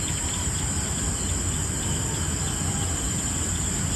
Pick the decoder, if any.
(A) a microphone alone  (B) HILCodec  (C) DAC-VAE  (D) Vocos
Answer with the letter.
A